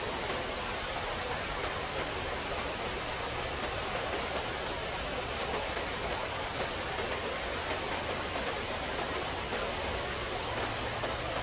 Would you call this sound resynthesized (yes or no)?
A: no